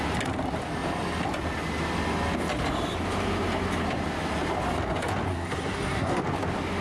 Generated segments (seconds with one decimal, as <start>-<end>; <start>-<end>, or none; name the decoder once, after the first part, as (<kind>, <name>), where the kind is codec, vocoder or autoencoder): 5.3-6.2 (codec, SNAC)